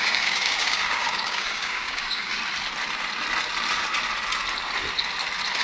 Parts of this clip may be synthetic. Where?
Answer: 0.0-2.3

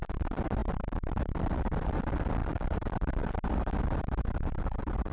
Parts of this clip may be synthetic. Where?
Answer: 0.6-2.0

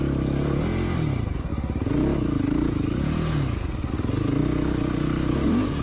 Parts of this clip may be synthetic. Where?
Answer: none

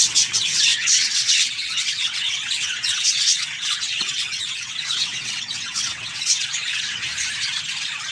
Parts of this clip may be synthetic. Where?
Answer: 0.0-7.1

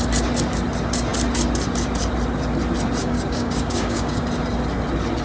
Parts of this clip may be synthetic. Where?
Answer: 3.0-4.2